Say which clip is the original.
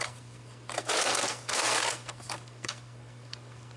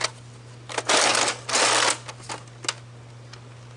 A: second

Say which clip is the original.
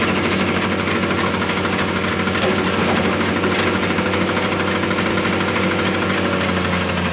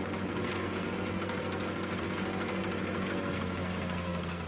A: first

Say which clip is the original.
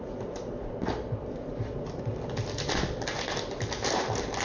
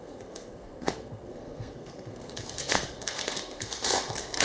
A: first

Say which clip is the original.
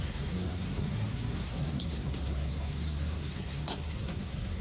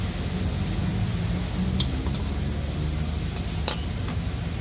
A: second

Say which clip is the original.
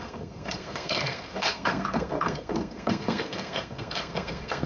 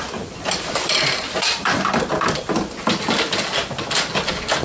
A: second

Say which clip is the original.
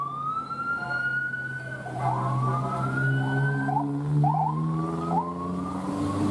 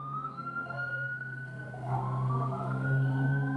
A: first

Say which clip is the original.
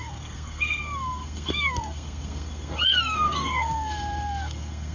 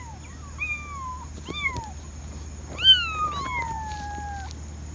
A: second